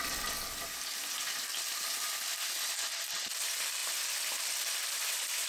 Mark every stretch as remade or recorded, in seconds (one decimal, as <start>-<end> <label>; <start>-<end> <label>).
0.0-5.5 recorded